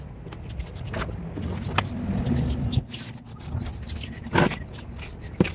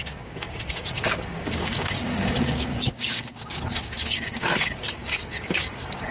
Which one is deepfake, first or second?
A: second